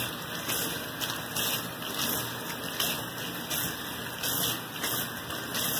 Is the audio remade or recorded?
recorded